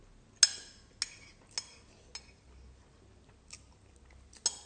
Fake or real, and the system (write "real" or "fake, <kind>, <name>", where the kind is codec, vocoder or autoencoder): real